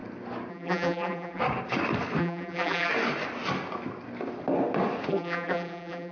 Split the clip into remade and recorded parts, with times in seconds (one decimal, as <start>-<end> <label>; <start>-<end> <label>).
0.0-0.5 recorded; 0.5-1.4 remade; 1.4-2.2 recorded; 2.2-2.9 remade; 2.9-5.1 recorded; 5.1-6.1 remade